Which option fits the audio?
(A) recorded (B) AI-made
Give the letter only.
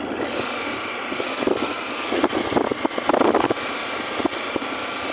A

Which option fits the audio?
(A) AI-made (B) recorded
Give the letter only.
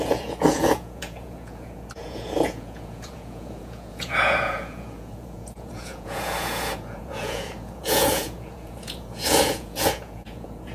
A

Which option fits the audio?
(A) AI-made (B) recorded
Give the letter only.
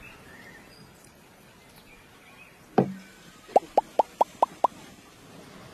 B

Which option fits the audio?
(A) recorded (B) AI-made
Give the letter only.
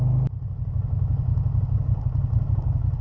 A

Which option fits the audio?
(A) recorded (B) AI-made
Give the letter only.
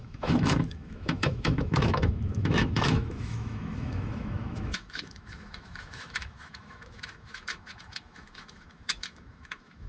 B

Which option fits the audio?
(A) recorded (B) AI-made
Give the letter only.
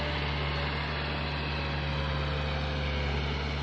A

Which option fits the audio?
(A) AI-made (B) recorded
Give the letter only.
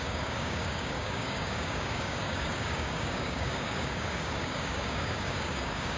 A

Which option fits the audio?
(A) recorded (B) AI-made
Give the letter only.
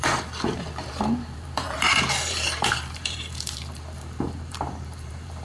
B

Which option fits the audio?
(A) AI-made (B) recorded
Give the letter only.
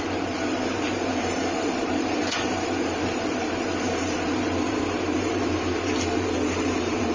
A